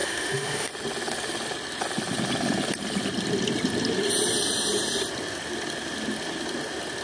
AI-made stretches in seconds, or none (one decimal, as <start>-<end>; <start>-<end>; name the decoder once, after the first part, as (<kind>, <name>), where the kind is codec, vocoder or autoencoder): 0.0-0.7 (autoencoder, DAC-VAE)